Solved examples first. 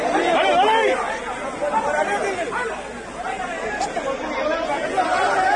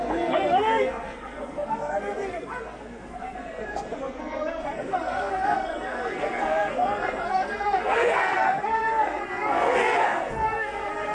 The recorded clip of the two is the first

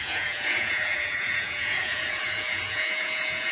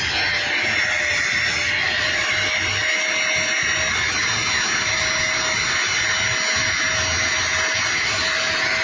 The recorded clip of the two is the second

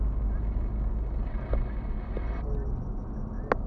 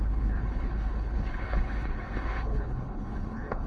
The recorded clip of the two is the first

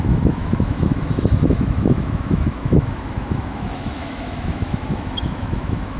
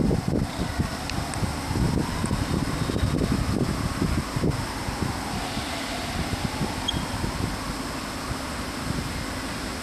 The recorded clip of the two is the second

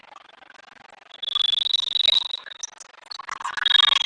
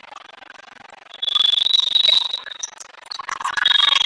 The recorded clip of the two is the first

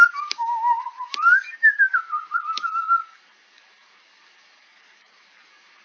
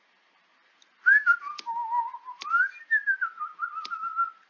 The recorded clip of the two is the second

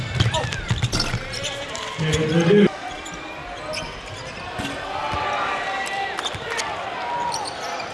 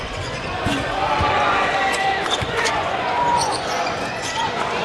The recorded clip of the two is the first